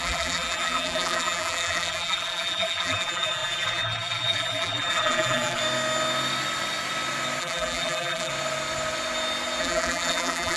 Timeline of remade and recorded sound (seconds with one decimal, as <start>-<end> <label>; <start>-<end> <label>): 0.0-5.6 remade; 5.6-7.4 recorded; 7.4-8.3 remade; 8.3-9.6 recorded; 9.6-10.6 remade